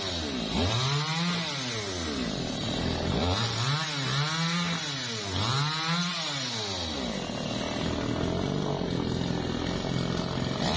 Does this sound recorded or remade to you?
recorded